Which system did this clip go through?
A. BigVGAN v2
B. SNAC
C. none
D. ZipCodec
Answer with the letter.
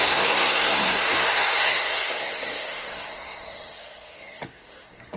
B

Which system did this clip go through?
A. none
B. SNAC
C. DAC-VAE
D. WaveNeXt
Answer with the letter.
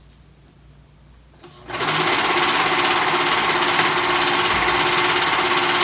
A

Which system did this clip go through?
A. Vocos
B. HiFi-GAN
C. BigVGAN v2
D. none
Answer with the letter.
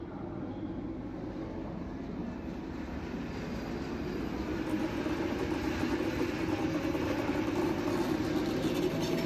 D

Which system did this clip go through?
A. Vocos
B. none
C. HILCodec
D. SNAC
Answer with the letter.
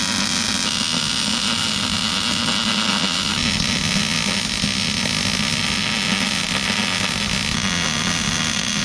B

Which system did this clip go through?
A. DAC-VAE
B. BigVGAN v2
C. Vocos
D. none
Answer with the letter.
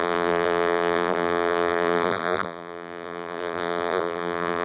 B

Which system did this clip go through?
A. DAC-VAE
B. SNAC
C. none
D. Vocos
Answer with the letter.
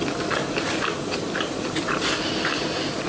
C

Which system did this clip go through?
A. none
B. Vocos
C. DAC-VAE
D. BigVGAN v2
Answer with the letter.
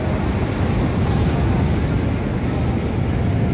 A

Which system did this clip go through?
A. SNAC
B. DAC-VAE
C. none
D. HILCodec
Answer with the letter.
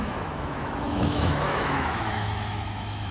B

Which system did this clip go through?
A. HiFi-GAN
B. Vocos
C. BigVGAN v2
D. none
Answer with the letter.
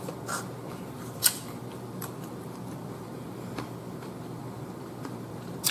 C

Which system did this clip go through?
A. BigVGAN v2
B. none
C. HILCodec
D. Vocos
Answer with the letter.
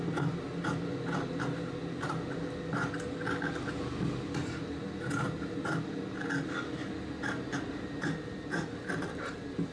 B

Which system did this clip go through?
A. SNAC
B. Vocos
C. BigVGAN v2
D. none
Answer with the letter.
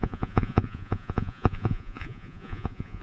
B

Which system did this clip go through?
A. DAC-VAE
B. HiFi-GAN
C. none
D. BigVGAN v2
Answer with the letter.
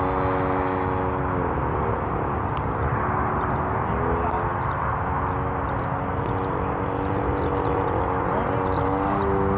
C